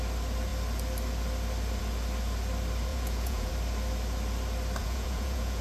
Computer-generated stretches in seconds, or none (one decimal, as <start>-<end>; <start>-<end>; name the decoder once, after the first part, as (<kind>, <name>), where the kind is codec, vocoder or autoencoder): 2.9-3.5 (vocoder, Vocos); 4.8-5.6